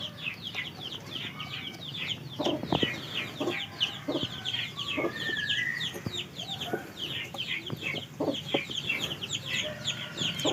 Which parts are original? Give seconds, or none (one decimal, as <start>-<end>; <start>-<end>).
none